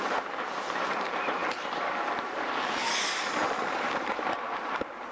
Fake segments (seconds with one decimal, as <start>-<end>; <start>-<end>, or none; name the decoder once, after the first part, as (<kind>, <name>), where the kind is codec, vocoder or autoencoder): 0.0-5.1 (vocoder, BigVGAN v2)